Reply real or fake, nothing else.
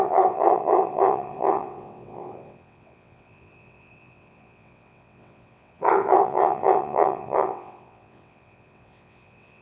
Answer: fake